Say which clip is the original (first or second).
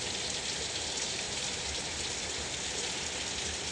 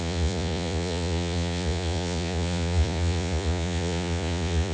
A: first